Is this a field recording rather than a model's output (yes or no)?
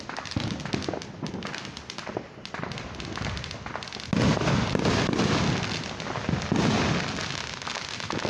yes